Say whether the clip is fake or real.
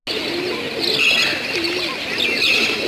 real